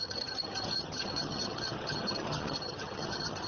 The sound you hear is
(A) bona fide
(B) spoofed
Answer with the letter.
B